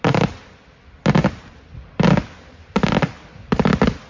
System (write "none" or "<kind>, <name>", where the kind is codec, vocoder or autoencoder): none